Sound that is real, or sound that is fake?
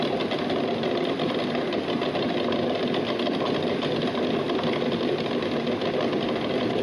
real